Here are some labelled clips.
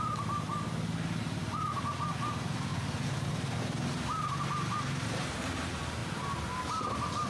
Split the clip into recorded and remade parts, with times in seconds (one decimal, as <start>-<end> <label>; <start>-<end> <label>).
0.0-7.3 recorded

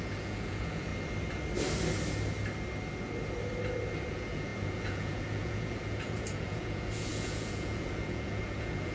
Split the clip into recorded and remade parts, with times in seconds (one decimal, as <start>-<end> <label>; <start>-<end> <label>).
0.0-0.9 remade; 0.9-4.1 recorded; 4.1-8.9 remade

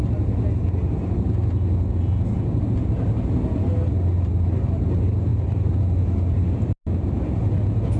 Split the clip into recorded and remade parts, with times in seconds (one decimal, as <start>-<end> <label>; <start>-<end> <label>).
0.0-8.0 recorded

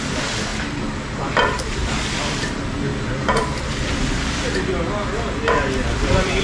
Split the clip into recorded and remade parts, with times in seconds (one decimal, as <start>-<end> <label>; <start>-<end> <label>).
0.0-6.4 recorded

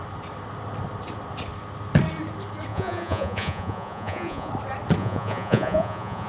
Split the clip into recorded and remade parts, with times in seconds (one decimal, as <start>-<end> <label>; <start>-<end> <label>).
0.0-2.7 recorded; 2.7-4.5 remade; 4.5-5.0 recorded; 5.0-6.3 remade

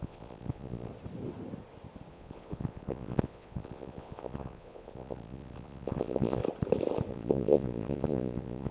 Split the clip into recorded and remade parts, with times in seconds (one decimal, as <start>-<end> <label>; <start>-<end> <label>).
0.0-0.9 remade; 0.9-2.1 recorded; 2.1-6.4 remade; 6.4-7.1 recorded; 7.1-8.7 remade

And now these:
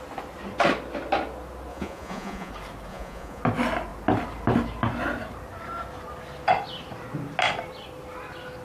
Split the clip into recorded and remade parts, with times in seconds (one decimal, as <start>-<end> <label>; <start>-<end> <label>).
0.0-1.7 recorded; 1.7-2.5 remade; 2.5-2.9 recorded; 2.9-3.4 remade; 3.4-8.6 recorded